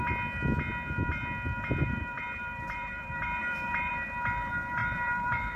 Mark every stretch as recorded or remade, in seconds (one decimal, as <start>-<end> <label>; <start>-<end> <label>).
0.0-1.8 recorded; 1.8-3.9 remade; 3.9-4.8 recorded; 4.8-5.6 remade